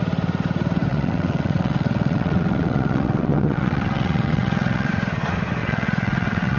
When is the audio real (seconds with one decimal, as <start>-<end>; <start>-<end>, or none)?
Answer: 0.0-0.9; 4.9-5.6